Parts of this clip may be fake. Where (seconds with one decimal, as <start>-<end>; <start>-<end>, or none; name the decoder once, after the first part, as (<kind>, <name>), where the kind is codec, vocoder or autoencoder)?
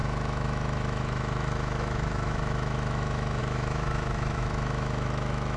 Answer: 0.0-5.6 (autoencoder, DAC-VAE)